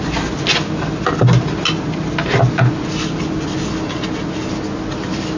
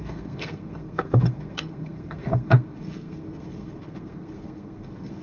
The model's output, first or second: second